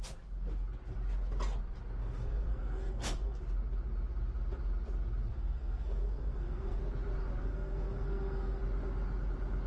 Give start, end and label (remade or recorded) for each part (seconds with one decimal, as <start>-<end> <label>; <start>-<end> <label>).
0.0-2.0 recorded; 2.0-3.4 remade; 3.4-5.3 recorded; 5.3-6.8 remade; 6.8-7.4 recorded; 7.4-8.6 remade; 8.6-9.7 recorded